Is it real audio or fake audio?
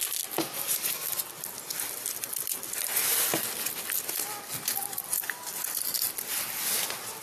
real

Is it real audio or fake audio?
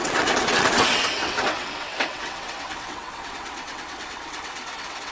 fake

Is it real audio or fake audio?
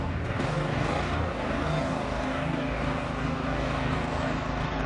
fake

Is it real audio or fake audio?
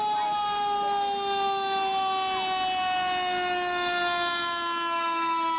real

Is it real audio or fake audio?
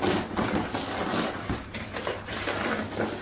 real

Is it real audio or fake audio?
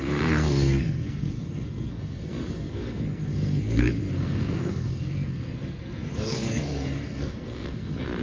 fake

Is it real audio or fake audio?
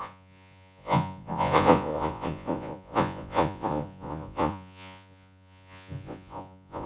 fake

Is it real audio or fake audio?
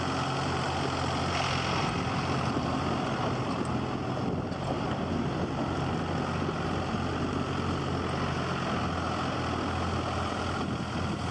real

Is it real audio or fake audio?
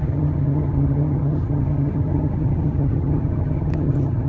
fake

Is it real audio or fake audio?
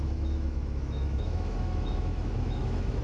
fake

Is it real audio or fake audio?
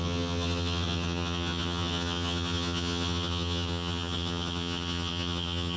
fake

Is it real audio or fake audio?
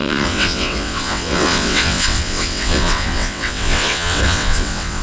fake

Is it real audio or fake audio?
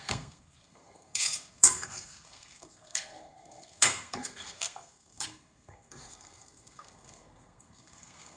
fake